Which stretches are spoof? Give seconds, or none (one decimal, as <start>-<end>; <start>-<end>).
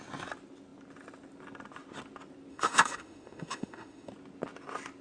2.5-4.1